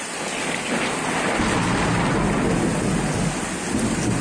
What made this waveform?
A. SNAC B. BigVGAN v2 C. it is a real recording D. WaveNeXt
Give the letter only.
C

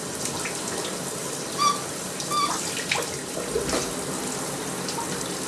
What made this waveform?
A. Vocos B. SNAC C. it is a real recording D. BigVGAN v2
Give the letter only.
C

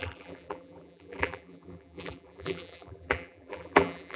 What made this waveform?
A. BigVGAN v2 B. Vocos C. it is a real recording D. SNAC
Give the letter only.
A